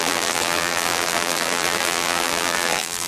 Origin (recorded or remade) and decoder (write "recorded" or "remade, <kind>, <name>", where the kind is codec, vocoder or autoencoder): remade, vocoder, BigVGAN v2